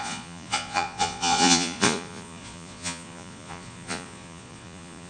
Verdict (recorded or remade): remade